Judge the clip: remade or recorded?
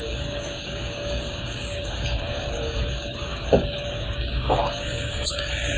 remade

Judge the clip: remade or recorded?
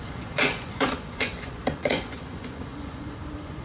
remade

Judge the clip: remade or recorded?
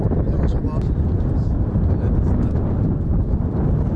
recorded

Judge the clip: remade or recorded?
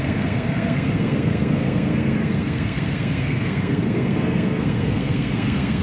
remade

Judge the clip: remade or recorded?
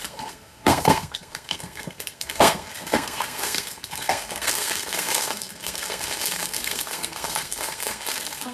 remade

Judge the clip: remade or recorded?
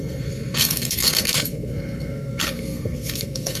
remade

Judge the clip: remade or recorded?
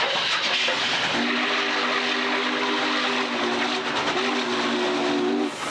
recorded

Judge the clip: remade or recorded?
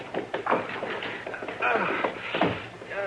recorded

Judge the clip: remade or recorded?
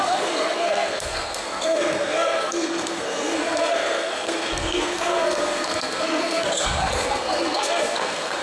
remade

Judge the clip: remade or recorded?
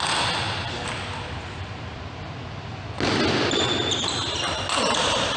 recorded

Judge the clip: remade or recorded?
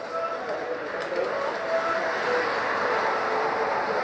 recorded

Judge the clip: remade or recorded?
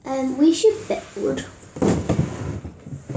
recorded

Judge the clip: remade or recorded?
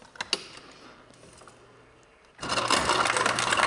recorded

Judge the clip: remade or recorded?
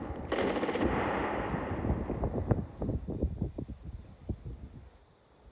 recorded